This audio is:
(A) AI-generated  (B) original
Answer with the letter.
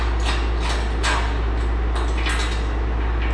B